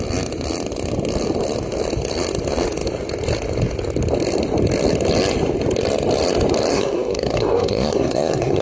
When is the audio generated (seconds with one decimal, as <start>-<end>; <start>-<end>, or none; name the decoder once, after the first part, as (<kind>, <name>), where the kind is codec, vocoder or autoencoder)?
6.7-8.6 (codec, SNAC)